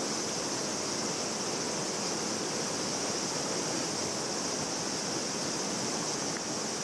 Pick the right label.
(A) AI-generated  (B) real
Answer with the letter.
B